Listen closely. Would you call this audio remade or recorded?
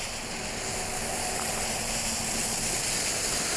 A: recorded